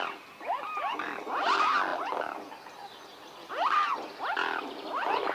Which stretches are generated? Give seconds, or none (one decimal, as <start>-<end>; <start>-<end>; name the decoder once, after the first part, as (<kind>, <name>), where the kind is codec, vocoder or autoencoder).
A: none